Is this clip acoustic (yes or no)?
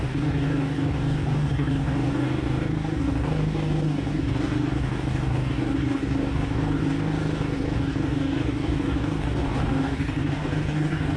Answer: no